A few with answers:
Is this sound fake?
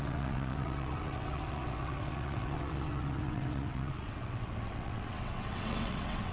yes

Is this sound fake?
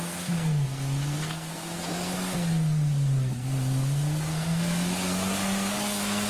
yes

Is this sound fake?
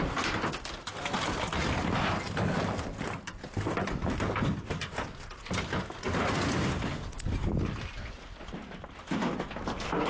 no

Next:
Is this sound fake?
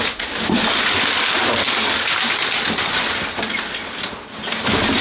no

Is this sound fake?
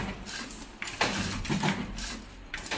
no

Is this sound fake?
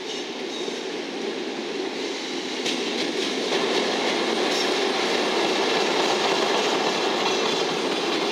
no